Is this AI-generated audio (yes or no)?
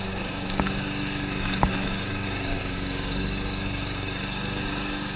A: yes